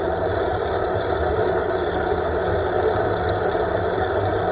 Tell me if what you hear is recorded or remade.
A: recorded